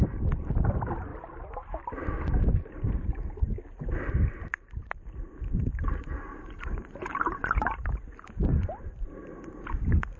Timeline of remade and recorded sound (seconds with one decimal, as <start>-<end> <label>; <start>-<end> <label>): 0.0-1.1 remade; 1.1-2.5 recorded; 2.5-10.2 remade

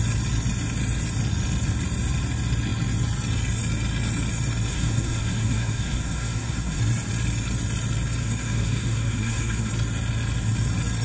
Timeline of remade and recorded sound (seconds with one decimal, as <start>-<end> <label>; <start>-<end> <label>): 0.0-4.7 recorded; 4.7-6.8 remade; 6.8-8.2 recorded; 8.2-9.7 remade; 9.7-11.0 recorded